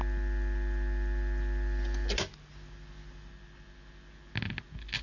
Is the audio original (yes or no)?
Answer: yes